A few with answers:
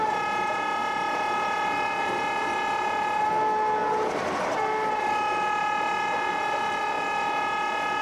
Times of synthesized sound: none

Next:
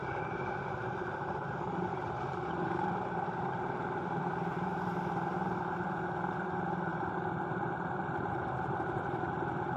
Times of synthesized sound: 0.0-6.9 (vocoder, BigVGAN v2); 8.6-9.8

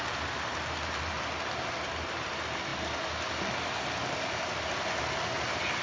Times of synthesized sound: none

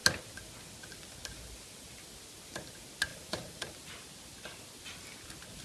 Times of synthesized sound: 3.1-3.7 (vocoder, BigVGAN v2)

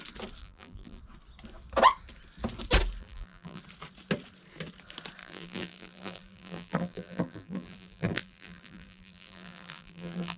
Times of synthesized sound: 0.4-1.0 (vocoder, BigVGAN v2); 3.0-3.6; 5.2-10.4

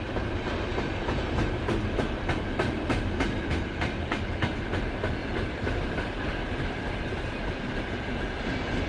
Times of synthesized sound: 5.2-6.8 (vocoder, BigVGAN v2)

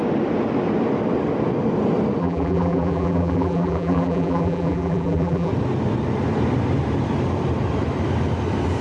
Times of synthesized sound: 2.2-5.5 (vocoder, BigVGAN v2)

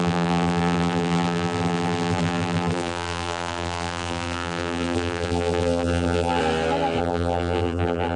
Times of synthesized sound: 0.0-6.4 (vocoder, BigVGAN v2); 7.0-8.2